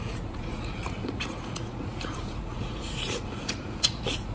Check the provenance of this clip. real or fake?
fake